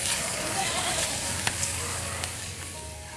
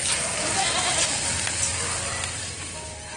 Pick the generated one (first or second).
first